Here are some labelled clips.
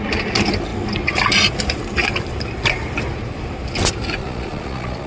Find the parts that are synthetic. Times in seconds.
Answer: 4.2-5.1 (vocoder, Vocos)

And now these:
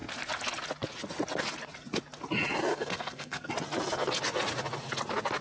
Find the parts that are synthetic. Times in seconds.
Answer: 2.7-3.5 (codec, SNAC)

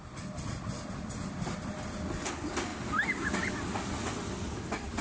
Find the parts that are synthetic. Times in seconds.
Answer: none

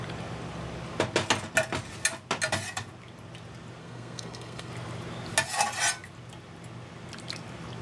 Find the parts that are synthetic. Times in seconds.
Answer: 3.8-4.7 (codec, SNAC)

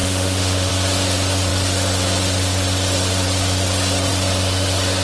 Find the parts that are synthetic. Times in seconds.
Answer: 0.0-0.7 (autoencoder, DAC-VAE)